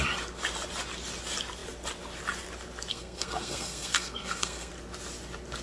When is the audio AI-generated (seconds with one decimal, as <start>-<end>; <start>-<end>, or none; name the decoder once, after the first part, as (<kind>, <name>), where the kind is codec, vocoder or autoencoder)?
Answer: 2.9-4.7 (codec, SNAC)